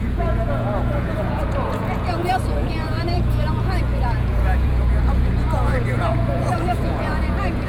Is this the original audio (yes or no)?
no